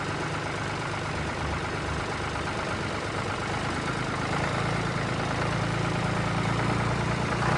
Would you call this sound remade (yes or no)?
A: yes